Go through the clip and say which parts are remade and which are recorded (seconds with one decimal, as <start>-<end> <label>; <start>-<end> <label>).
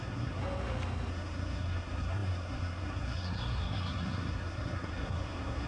0.0-0.4 remade; 0.4-1.1 recorded; 1.1-5.7 remade